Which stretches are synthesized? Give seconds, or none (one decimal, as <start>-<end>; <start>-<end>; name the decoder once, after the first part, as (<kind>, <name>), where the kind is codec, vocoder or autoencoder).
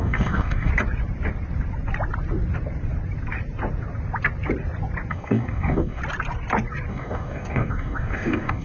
0.0-0.7 (codec, DAC); 5.1-6.0; 6.9-8.6